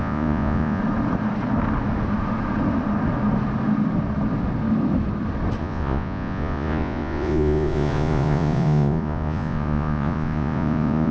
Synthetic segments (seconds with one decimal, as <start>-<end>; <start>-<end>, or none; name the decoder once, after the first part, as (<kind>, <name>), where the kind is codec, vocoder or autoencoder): 0.0-0.8 (vocoder, Vocos); 5.6-11.1